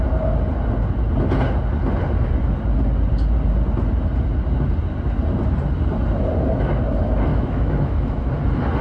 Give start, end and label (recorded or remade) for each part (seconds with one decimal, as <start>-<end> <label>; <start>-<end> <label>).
0.0-7.3 recorded; 7.3-8.3 remade; 8.3-8.8 recorded